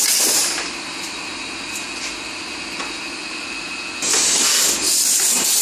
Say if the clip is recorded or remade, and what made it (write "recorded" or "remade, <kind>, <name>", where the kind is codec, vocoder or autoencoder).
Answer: recorded